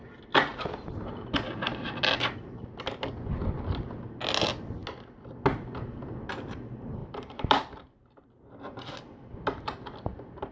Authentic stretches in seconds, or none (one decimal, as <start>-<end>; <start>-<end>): 0.0-0.5; 1.1-7.0; 8.3-10.5